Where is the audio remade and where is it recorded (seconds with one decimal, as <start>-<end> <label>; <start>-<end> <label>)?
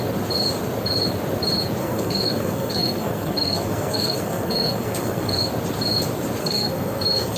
0.0-1.8 recorded; 1.8-5.4 remade; 5.4-6.4 recorded; 6.4-7.4 remade